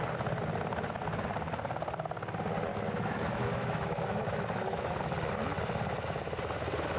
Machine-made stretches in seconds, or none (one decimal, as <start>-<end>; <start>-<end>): 2.7-5.0